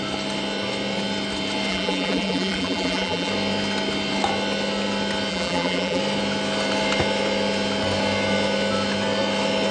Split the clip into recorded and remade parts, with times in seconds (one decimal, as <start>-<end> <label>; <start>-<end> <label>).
0.0-1.7 recorded; 1.7-3.3 remade; 3.3-5.3 recorded; 5.3-6.0 remade; 6.0-9.7 recorded